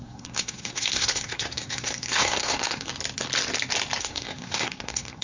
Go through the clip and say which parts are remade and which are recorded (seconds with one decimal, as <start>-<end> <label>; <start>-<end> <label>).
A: 0.0-2.9 remade; 2.9-4.0 recorded; 4.0-5.2 remade